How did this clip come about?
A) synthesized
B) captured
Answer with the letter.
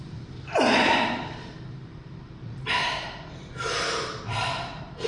A